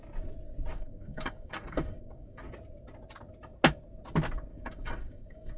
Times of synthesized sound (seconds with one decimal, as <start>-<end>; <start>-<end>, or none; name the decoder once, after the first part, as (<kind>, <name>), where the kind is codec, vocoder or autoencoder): 0.7-2.4 (codec, DAC); 4.5-5.6